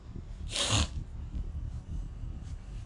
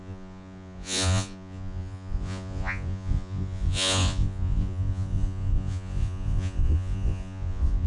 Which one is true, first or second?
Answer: first